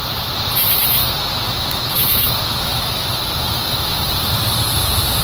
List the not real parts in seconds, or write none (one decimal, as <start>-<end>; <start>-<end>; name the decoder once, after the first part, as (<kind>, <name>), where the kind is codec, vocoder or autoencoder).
1.0-4.1 (autoencoder, DAC-VAE)